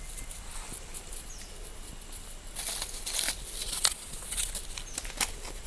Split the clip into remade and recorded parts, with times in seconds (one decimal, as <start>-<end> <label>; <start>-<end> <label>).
0.0-3.6 recorded; 3.6-4.5 remade; 4.5-5.7 recorded